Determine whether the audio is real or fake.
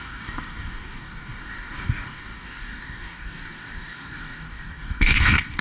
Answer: fake